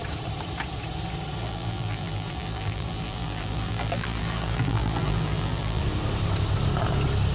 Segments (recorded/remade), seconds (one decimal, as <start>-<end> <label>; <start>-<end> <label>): 0.0-1.4 recorded; 1.4-5.8 remade; 5.8-7.3 recorded

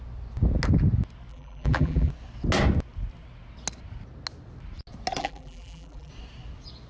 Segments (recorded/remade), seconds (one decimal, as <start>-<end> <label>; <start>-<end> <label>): 0.0-1.3 recorded; 1.3-2.1 remade; 2.1-5.2 recorded; 5.2-6.1 remade; 6.1-6.9 recorded

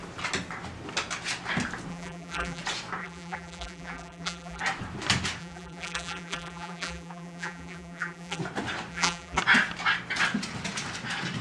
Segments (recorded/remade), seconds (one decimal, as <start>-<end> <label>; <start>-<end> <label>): 0.0-1.9 recorded; 1.9-2.6 remade; 2.6-3.0 recorded; 3.0-4.6 remade; 4.6-5.4 recorded; 5.4-8.4 remade; 8.4-8.9 recorded; 8.9-9.4 remade; 9.4-11.4 recorded

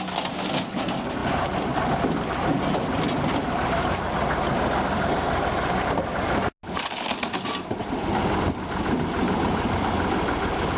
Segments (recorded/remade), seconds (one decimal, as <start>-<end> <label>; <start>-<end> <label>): 0.0-10.8 recorded

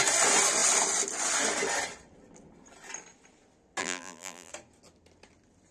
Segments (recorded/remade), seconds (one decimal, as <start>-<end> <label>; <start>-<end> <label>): 0.0-3.8 recorded; 3.8-4.5 remade; 4.5-5.7 recorded